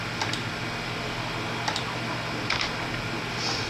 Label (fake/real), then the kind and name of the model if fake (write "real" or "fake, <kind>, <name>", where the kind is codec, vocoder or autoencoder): real